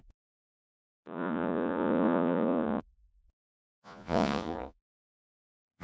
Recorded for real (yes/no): no